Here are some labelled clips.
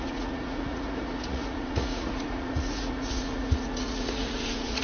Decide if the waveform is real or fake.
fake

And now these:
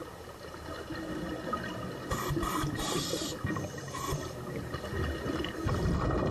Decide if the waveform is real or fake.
real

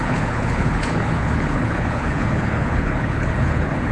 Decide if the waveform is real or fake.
fake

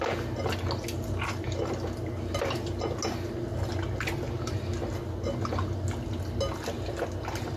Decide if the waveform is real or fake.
real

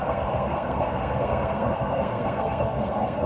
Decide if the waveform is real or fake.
fake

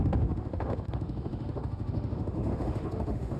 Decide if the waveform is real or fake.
fake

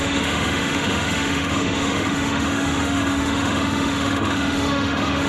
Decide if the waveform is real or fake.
fake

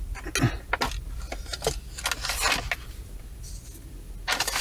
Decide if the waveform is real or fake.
real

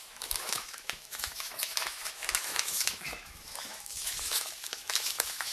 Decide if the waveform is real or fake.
fake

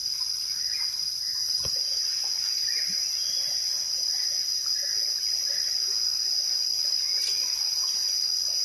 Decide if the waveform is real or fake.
real